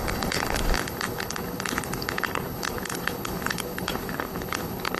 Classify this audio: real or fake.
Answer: fake